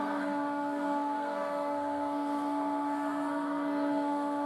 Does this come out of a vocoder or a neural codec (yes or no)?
yes